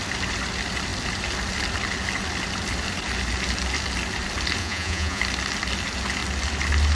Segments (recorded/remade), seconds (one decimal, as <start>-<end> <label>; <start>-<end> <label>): 0.0-4.6 recorded; 4.6-5.2 remade; 5.2-7.0 recorded